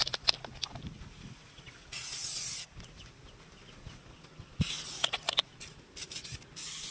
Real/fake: real